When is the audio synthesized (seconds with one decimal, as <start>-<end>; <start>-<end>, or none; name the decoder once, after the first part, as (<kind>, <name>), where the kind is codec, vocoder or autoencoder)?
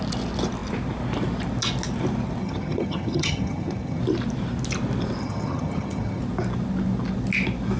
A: 2.4-4.0 (vocoder, HiFi-GAN); 5.2-6.2